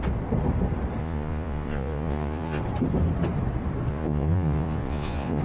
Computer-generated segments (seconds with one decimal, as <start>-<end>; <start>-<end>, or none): 1.0-2.6; 3.9-5.4